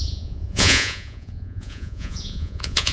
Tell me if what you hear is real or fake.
fake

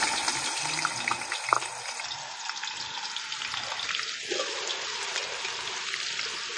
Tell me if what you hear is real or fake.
real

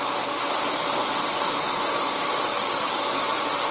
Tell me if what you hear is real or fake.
real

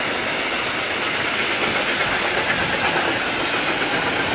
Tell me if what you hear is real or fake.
real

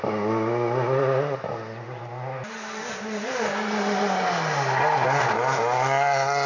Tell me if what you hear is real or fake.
real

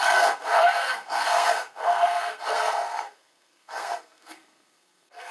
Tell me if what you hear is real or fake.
fake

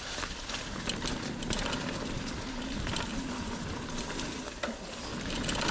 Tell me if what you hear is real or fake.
fake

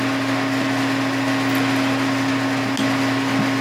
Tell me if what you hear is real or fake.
real